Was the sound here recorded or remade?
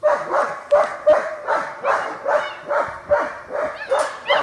remade